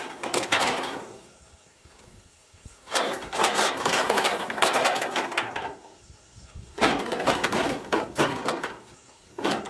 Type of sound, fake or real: fake